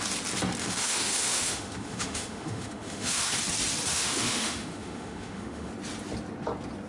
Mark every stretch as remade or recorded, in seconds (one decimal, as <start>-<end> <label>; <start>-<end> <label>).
0.0-0.6 recorded; 0.6-3.3 remade; 3.3-3.9 recorded; 3.9-5.7 remade; 5.7-6.9 recorded